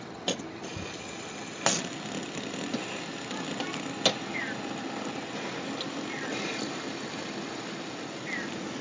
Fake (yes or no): no